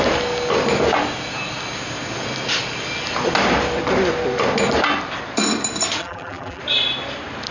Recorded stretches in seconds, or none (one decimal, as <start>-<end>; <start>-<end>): 0.0-6.0; 6.6-7.5